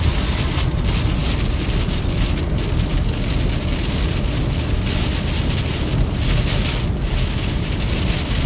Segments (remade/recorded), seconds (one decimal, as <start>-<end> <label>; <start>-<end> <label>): 0.0-8.5 recorded